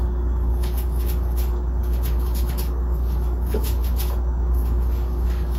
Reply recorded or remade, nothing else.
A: remade